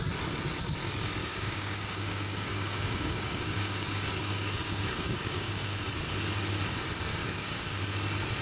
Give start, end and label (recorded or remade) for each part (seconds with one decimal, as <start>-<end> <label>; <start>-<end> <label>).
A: 0.0-1.2 recorded; 1.2-5.8 remade; 5.8-7.1 recorded; 7.1-7.8 remade; 7.8-8.4 recorded